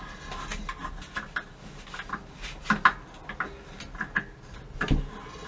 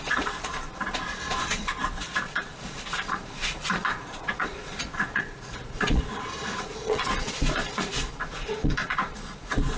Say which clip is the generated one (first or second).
second